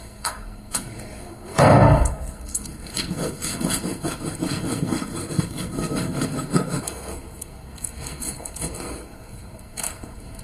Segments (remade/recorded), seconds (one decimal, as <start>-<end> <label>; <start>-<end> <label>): 0.0-10.4 remade